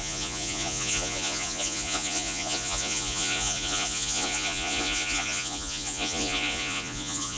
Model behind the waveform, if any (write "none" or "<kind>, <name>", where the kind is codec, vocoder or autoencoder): vocoder, Vocos